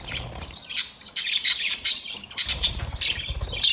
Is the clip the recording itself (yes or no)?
yes